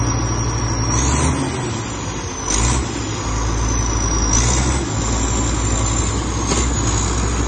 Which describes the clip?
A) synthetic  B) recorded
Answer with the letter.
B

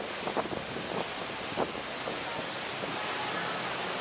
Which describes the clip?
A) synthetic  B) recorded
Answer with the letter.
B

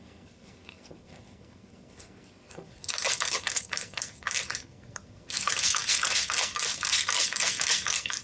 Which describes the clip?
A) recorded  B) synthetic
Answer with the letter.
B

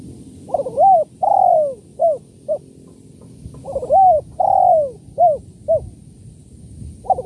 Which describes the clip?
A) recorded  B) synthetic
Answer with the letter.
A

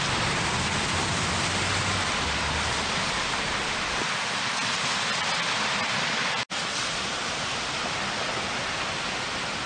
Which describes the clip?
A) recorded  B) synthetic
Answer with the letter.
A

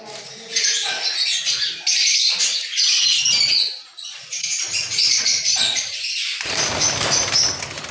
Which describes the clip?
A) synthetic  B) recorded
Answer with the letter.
B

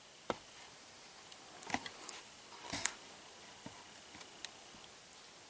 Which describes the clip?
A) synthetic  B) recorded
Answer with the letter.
B